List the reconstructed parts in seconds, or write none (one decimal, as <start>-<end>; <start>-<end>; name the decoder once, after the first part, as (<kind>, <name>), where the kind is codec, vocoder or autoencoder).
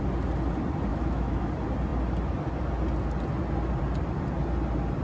0.9-1.5 (autoencoder, DAC-VAE)